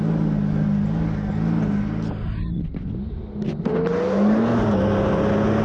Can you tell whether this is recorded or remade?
recorded